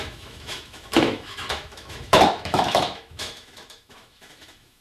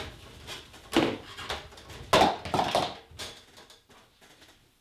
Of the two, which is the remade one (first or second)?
first